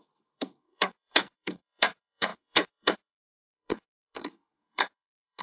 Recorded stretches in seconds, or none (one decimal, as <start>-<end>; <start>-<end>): none